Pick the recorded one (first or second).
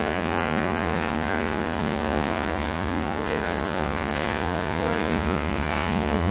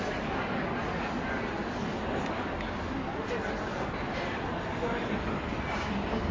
second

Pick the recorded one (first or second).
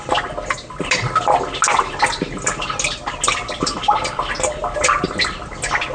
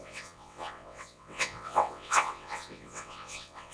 first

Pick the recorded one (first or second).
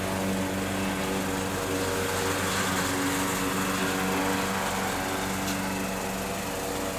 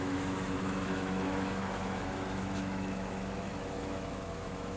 first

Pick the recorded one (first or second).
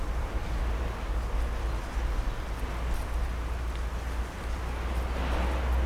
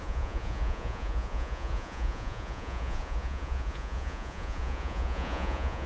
first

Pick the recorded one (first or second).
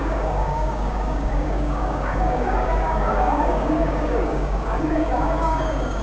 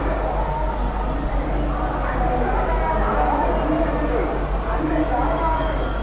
second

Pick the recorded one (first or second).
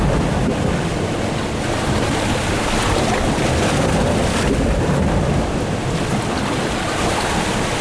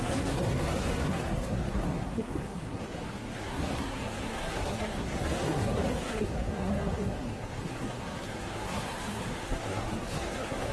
first